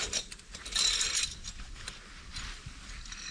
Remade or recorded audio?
remade